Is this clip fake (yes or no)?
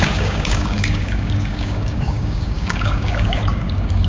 yes